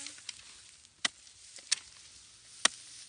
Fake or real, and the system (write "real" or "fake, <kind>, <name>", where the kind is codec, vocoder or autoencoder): real